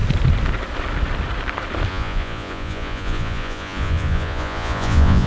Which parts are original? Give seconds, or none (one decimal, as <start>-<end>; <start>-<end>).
0.0-1.9